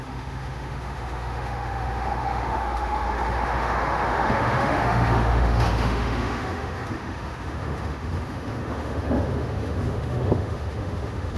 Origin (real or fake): fake